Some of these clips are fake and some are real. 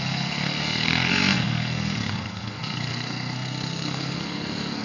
fake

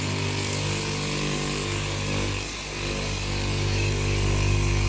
fake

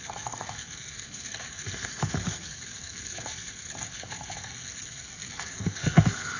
fake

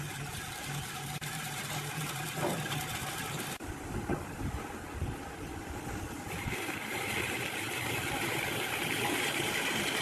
fake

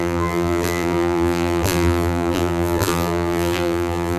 fake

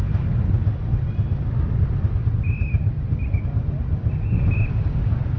real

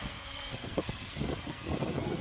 fake